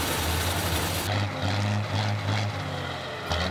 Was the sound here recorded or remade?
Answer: recorded